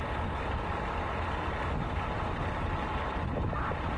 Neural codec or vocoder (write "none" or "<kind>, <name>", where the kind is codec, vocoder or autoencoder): none